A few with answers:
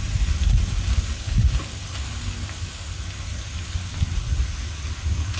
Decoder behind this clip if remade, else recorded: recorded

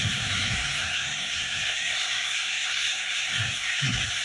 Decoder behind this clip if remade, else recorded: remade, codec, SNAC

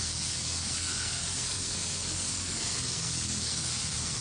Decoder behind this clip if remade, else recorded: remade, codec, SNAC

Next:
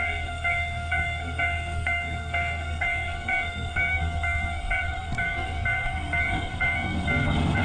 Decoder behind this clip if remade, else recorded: remade, codec, SNAC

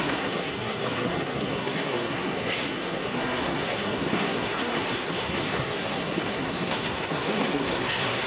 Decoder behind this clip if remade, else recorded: remade, codec, SNAC